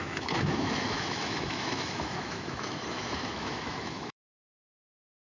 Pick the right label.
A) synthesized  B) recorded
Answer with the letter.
A